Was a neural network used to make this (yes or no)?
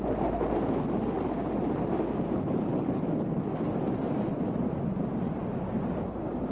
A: no